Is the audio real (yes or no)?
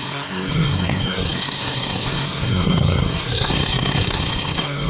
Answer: no